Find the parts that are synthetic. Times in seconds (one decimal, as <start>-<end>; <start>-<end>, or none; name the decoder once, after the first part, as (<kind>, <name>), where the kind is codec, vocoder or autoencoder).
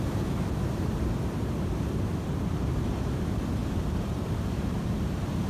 3.6-5.5 (vocoder, BigVGAN v2)